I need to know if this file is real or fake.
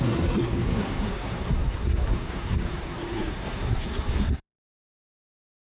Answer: fake